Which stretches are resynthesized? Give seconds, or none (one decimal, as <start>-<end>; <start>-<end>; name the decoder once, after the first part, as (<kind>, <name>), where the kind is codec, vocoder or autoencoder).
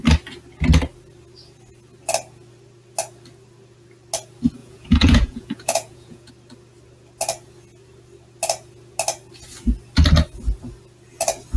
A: 4.6-6.3 (vocoder, Vocos)